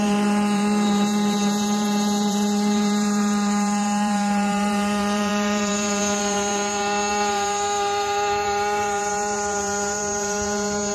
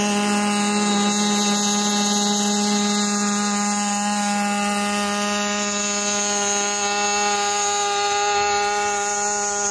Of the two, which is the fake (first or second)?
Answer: first